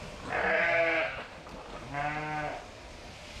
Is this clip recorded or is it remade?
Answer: recorded